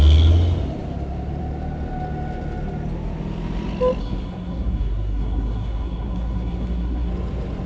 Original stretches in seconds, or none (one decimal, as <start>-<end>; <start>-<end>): 0.0-4.0; 7.1-7.7